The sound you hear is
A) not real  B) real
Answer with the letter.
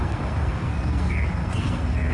A